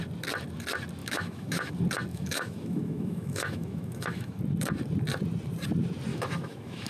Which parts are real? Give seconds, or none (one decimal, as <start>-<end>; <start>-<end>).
0.0-1.0; 1.7-2.1; 4.4-6.1